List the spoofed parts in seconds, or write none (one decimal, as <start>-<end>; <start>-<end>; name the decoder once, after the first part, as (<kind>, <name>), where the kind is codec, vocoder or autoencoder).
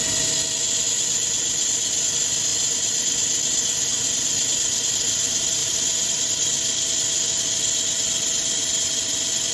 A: 5.6-6.2 (vocoder, BigVGAN v2)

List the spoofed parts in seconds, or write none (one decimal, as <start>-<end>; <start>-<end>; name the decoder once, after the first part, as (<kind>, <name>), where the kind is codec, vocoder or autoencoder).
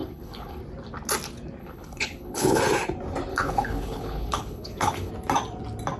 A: 0.0-0.6 (codec, HILCodec); 1.6-2.6; 3.3-5.1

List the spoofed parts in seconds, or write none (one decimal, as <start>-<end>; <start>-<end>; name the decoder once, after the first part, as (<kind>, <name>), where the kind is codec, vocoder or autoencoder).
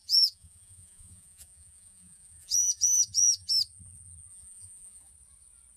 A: 0.0-3.5 (vocoder, Vocos); 4.3-5.1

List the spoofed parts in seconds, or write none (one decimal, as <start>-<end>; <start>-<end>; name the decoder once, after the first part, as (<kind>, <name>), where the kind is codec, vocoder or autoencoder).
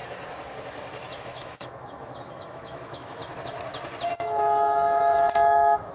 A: 1.2-3.2 (autoencoder, DAC-VAE); 4.1-5.9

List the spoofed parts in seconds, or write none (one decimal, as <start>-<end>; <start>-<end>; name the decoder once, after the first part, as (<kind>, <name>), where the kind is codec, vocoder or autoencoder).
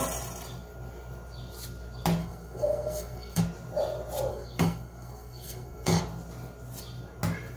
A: 2.2-3.4 (codec, SNAC); 4.3-6.0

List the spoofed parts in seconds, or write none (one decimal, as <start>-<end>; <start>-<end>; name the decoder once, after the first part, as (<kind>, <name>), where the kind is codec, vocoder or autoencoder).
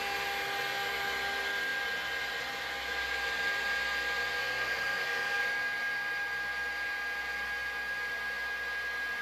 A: 4.4-5.4 (codec, SNAC)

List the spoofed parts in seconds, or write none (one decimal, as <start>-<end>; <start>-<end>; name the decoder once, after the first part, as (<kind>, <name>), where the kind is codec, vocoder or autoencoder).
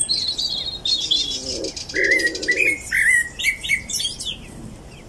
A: 3.6-4.6 (vocoder, BigVGAN v2)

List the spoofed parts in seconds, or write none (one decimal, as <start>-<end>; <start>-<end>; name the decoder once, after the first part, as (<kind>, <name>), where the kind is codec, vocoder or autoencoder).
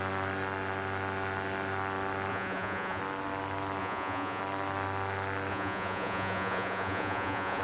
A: 2.3-3.0 (vocoder, Vocos); 3.8-4.4; 5.5-7.6